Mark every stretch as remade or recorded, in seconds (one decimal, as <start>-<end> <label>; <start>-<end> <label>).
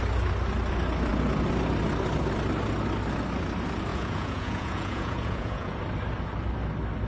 0.0-3.9 recorded; 3.9-5.8 remade; 5.8-7.1 recorded